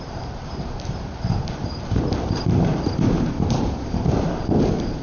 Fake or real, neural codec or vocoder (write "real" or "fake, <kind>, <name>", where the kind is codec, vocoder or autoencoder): fake, vocoder, BigVGAN v2